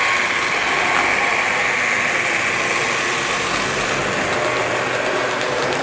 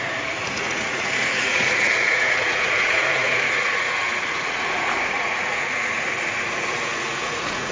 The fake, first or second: second